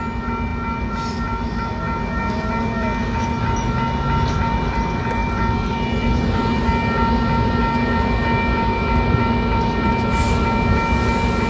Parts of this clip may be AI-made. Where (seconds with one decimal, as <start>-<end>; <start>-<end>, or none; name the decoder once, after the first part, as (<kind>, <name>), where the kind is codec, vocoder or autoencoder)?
none